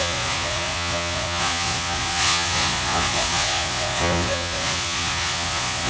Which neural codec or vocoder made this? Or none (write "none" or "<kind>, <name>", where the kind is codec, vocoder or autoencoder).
vocoder, Vocos